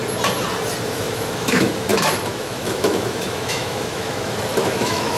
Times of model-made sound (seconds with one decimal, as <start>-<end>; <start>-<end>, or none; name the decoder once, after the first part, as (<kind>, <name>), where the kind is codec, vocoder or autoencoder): 0.9-5.2 (autoencoder, DAC-VAE)